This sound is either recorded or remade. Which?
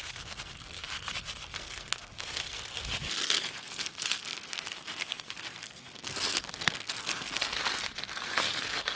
remade